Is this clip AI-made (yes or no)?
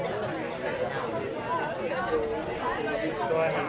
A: no